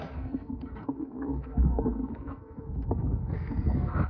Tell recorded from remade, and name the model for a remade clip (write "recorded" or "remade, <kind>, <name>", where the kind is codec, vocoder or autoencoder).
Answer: remade, codec, SNAC